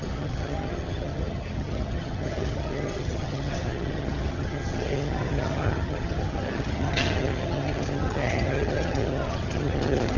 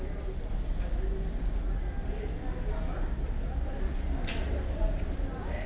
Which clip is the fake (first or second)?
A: first